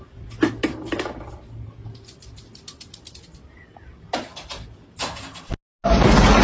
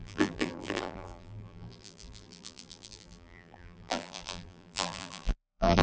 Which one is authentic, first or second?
first